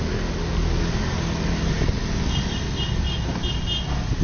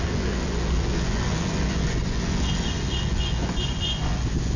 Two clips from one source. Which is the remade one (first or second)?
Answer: second